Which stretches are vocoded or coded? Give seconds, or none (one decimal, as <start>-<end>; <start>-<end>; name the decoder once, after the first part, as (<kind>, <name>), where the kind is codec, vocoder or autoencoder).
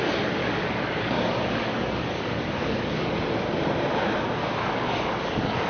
0.4-3.2 (codec, DAC); 4.4-5.7